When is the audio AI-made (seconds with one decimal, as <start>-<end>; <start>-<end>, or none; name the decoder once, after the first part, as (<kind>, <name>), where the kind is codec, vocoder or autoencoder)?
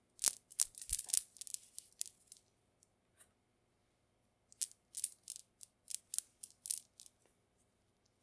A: 1.5-2.3 (vocoder, BigVGAN v2); 5.4-6.0